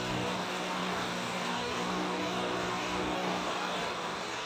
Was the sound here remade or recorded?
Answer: remade